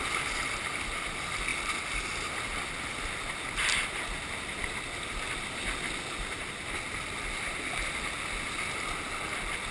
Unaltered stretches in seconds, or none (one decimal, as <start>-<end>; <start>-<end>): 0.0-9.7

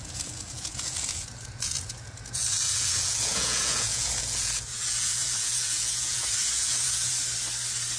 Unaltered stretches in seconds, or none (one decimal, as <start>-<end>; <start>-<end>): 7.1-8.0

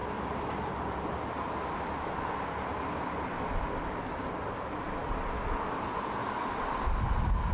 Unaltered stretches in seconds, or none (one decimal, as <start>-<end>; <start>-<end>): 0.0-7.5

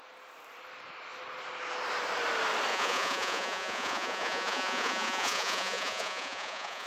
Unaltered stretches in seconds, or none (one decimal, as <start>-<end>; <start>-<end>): 0.0-2.7